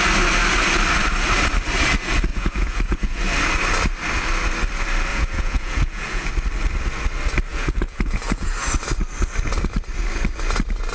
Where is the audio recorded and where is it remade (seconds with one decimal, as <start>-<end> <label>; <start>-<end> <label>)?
0.0-2.3 recorded; 2.3-3.2 remade; 3.2-5.1 recorded; 5.1-6.3 remade; 6.3-7.5 recorded; 7.5-8.5 remade; 8.5-10.9 recorded

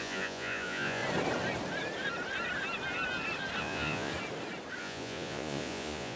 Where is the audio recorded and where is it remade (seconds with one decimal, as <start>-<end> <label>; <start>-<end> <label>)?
0.0-1.0 remade; 1.0-3.6 recorded; 3.6-4.1 remade; 4.1-4.8 recorded; 4.8-6.2 remade

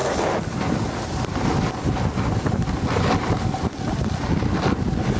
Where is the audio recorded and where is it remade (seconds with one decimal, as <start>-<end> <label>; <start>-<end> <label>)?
0.0-5.2 recorded